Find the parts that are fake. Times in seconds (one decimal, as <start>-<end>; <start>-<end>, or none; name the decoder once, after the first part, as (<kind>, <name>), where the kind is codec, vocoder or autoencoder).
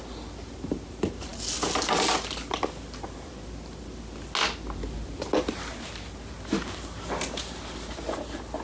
none